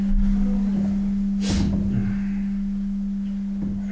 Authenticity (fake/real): real